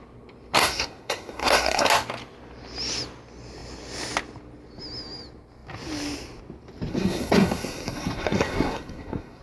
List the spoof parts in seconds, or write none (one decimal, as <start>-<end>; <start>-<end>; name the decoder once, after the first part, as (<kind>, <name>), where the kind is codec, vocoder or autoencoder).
0.6-1.9 (codec, SNAC); 6.9-9.4